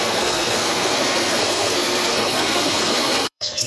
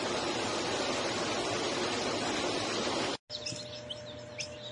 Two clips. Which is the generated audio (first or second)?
first